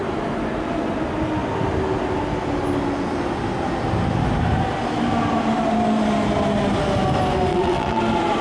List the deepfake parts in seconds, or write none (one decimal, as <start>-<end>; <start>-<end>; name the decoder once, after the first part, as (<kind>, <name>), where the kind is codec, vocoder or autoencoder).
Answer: 7.5-8.0 (vocoder, WaveNeXt)